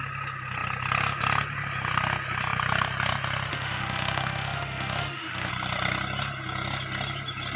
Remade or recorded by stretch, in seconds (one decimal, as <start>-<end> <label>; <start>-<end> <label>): 0.0-3.5 recorded; 3.5-5.5 remade; 5.5-7.6 recorded